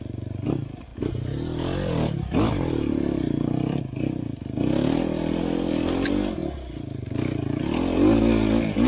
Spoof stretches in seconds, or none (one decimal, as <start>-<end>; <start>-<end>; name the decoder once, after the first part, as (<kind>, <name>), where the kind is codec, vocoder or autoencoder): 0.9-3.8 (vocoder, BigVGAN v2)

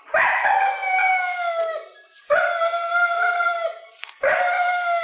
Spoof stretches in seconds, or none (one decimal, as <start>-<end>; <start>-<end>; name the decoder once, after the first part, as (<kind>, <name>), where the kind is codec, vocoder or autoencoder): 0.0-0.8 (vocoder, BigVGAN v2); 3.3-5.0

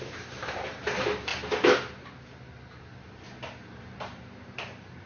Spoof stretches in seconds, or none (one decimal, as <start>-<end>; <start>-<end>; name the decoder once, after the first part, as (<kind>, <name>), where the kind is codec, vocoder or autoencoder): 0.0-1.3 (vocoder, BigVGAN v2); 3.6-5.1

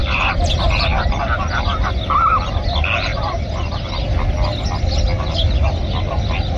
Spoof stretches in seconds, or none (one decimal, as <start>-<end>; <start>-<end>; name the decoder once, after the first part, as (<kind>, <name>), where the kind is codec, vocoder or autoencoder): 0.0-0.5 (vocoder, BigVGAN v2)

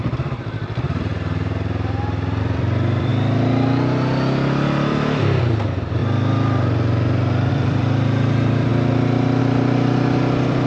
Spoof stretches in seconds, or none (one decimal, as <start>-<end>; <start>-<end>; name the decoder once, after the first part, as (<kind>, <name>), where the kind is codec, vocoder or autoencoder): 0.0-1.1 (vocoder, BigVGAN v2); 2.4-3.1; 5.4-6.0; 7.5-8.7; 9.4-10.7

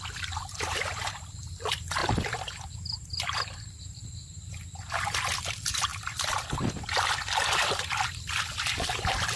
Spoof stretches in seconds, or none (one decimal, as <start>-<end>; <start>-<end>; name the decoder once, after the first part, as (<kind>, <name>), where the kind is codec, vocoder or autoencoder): 0.0-2.0 (vocoder, BigVGAN v2); 5.2-5.9; 6.7-9.4

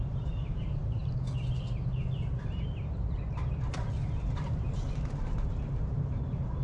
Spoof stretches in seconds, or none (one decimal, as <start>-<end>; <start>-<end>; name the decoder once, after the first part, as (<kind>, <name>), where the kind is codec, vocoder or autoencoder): 0.0-1.0 (vocoder, BigVGAN v2); 3.7-6.6

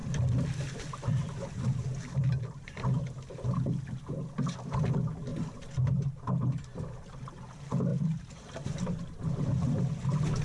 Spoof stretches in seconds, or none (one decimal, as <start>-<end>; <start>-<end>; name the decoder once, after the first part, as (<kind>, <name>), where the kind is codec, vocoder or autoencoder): 0.0-2.7 (vocoder, BigVGAN v2)